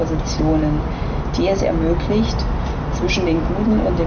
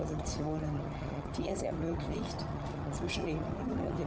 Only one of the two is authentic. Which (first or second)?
first